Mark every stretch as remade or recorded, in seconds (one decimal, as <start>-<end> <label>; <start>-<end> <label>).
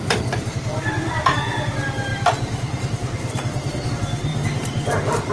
0.0-0.5 remade; 0.5-2.1 recorded; 2.1-3.9 remade; 3.9-4.3 recorded; 4.3-5.3 remade